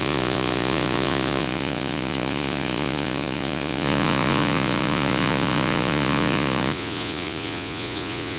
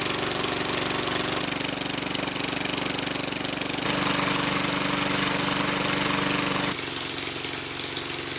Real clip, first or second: second